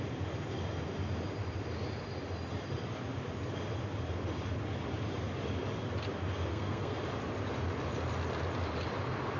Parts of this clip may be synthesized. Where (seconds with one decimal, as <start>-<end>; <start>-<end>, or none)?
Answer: 6.5-7.0